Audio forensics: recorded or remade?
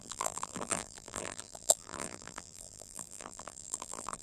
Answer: remade